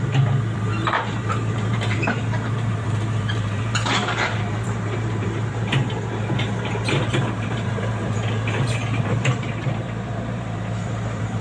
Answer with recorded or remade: remade